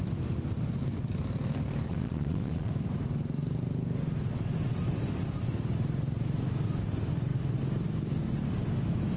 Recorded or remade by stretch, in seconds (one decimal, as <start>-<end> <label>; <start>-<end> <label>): 0.0-1.9 recorded; 1.9-2.7 remade; 2.7-9.2 recorded